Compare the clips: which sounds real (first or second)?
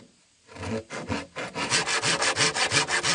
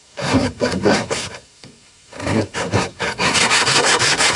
first